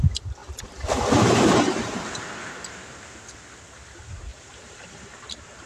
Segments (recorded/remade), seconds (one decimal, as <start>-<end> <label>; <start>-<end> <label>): 0.0-0.4 recorded; 0.4-3.3 remade; 3.3-4.3 recorded; 4.3-5.7 remade